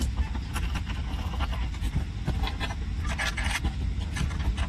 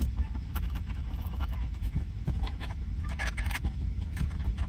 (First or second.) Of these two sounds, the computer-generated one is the second